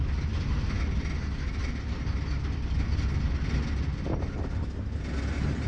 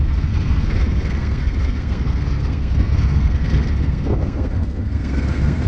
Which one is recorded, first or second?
first